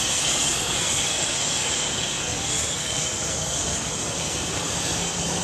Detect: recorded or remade remade